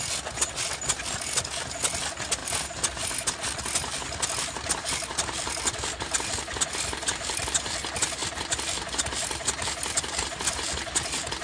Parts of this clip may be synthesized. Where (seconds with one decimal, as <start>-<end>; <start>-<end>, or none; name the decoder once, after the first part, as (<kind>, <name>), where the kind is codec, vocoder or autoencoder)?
none